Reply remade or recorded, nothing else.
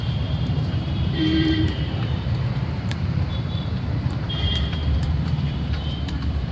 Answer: remade